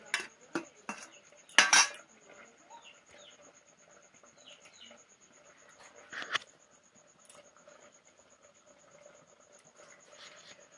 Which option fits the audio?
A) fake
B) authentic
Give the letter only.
B